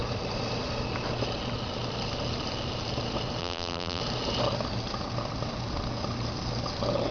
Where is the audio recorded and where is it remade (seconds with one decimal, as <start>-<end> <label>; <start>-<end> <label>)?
0.0-3.4 recorded; 3.4-4.0 remade; 4.0-7.1 recorded